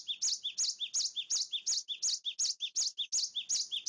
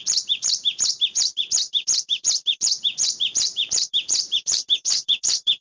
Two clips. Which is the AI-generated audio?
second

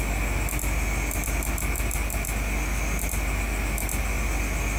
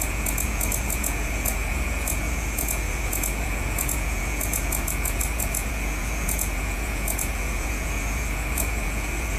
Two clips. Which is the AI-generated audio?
second